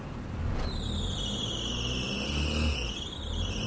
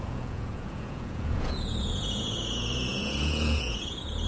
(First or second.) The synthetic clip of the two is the second